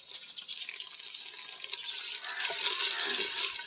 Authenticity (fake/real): real